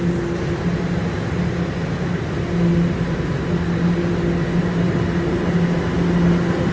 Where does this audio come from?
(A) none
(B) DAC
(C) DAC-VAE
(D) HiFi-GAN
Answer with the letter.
A